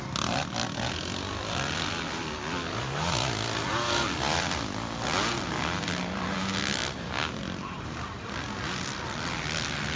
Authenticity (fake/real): real